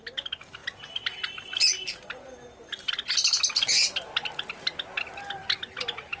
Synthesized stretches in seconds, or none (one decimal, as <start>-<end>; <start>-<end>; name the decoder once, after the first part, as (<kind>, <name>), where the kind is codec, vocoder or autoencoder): none